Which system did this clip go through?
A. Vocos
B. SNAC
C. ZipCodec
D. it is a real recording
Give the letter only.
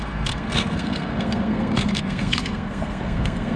B